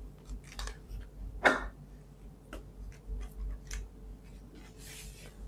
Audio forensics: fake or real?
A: real